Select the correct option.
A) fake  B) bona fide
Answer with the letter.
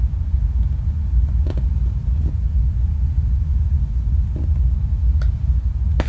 B